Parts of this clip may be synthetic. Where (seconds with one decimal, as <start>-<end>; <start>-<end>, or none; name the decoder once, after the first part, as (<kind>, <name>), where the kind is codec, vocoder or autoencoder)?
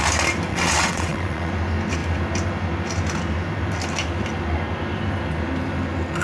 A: 0.5-1.5 (vocoder, WaveNeXt)